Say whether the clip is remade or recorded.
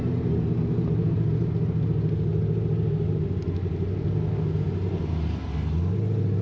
recorded